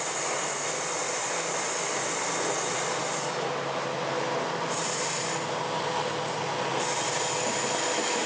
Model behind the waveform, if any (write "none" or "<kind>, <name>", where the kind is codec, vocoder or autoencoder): none